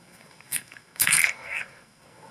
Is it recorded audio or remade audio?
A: remade